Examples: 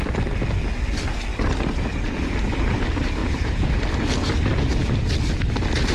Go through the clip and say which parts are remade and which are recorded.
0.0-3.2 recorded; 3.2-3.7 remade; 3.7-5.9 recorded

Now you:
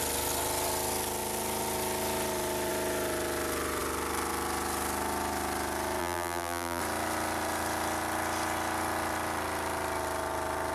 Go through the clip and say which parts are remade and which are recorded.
0.0-6.0 recorded; 6.0-6.8 remade; 6.8-10.7 recorded

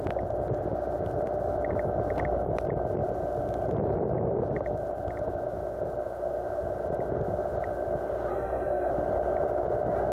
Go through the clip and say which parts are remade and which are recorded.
0.0-8.3 recorded; 8.3-8.9 remade; 8.9-10.1 recorded

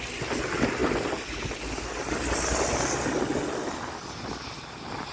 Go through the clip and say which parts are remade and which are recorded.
0.0-5.1 recorded

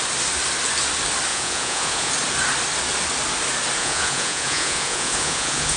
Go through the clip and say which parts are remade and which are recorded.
0.0-1.3 recorded; 1.3-2.1 remade; 2.1-3.8 recorded; 3.8-5.8 remade

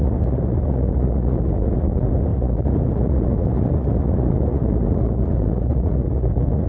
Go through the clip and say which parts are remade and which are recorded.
0.0-6.7 remade

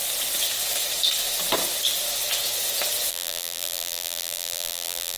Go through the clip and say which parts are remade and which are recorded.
0.0-3.1 recorded; 3.1-5.2 remade

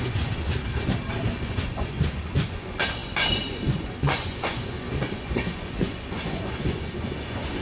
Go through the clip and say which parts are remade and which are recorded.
0.0-0.6 remade; 0.6-1.4 recorded; 1.4-7.6 remade